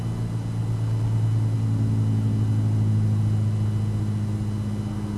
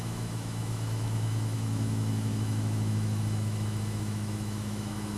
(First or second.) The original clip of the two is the first